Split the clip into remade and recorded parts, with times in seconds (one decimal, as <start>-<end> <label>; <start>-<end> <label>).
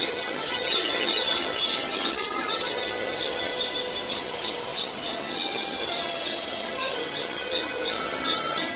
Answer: 0.0-3.5 remade; 3.5-4.1 recorded; 4.1-8.8 remade